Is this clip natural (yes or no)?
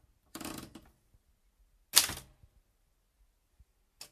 yes